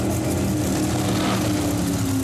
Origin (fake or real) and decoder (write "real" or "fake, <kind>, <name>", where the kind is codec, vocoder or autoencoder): real